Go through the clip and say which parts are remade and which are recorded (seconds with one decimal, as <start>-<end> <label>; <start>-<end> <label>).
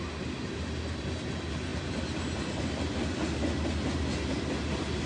0.0-5.1 recorded